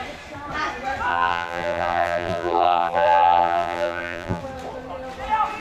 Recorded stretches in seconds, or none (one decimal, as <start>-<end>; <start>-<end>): 0.0-1.1; 4.4-5.6

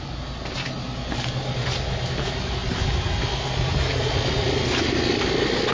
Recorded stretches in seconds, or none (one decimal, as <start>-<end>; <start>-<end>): 0.0-5.7

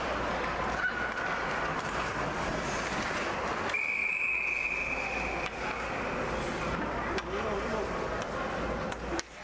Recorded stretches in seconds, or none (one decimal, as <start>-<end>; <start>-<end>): 0.0-1.7; 2.5-9.4